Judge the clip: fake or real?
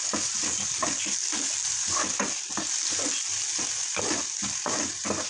real